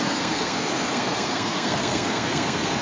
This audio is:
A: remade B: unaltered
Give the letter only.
A